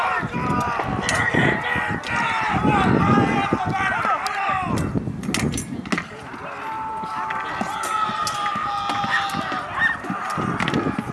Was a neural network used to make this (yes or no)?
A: no